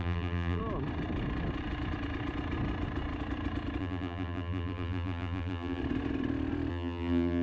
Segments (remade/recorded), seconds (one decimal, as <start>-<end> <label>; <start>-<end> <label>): 0.0-0.6 remade; 0.6-3.8 recorded; 3.8-5.8 remade; 5.8-6.7 recorded; 6.7-7.4 remade